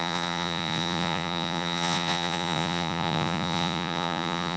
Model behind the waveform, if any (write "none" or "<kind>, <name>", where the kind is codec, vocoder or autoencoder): vocoder, Vocos